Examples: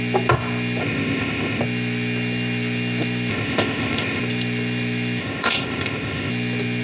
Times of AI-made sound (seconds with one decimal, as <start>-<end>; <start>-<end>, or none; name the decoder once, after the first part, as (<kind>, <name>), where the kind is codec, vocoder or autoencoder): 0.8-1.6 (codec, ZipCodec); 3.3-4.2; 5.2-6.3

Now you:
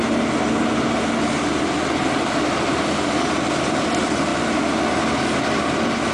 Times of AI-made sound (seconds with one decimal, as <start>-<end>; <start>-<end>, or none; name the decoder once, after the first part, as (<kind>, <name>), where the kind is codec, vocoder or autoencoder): none

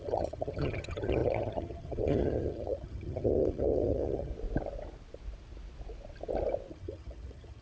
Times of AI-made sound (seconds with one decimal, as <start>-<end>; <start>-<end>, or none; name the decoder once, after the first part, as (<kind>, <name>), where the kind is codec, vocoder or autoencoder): 0.0-4.3 (vocoder, HiFi-GAN); 6.7-7.6

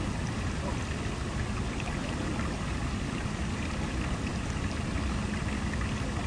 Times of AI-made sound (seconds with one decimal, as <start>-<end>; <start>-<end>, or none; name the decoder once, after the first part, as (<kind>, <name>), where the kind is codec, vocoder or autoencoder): none